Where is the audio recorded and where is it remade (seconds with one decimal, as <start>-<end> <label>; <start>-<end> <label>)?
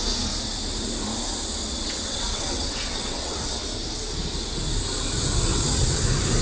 0.0-1.6 recorded; 1.6-3.6 remade; 3.6-5.5 recorded; 5.5-6.0 remade; 6.0-6.4 recorded